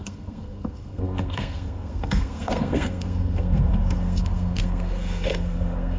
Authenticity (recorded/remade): remade